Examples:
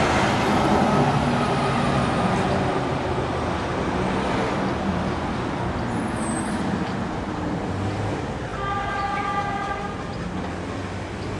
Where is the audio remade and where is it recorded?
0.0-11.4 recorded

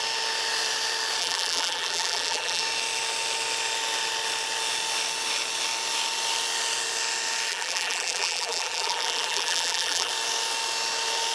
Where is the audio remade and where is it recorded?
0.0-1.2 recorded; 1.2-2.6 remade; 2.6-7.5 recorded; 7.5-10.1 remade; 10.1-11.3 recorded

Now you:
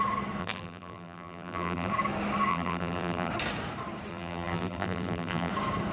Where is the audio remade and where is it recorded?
0.0-0.4 recorded; 0.4-1.9 remade; 1.9-2.5 recorded; 2.5-3.3 remade; 3.3-4.1 recorded; 4.1-5.5 remade; 5.5-5.9 recorded

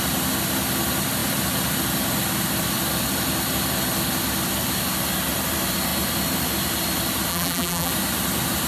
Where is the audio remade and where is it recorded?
0.0-7.3 recorded; 7.3-7.9 remade; 7.9-8.7 recorded

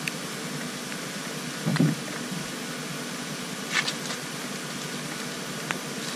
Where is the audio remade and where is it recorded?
0.0-1.7 recorded; 1.7-2.3 remade; 2.3-6.2 recorded

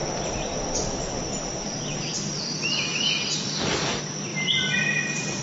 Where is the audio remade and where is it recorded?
0.0-5.4 recorded